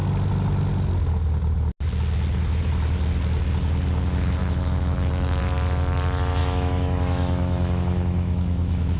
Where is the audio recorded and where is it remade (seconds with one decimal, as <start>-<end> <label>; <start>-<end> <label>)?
0.0-4.4 recorded; 4.4-5.4 remade; 5.4-6.4 recorded; 6.4-9.0 remade